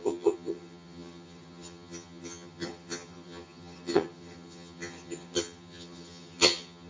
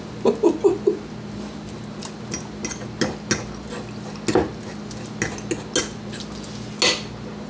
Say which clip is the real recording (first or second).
second